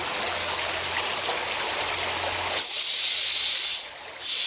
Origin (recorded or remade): recorded